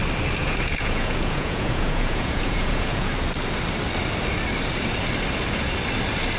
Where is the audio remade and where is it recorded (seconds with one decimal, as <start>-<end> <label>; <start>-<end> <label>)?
0.0-0.4 recorded; 0.4-3.1 remade; 3.1-6.4 recorded